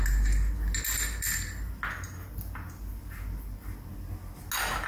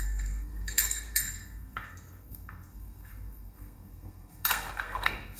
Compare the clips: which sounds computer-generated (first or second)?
second